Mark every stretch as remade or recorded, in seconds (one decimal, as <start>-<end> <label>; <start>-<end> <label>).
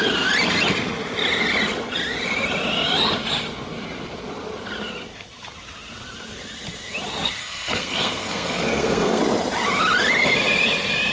0.0-7.4 recorded; 7.4-9.2 remade; 9.2-11.1 recorded